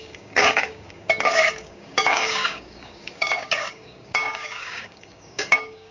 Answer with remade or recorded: remade